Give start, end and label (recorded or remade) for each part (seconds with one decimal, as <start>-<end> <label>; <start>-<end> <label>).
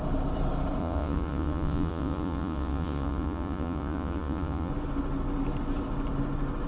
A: 0.0-0.8 recorded; 0.8-4.7 remade; 4.7-6.7 recorded